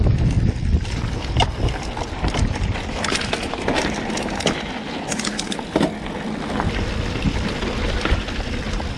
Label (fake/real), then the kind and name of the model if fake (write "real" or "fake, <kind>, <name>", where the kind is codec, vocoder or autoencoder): real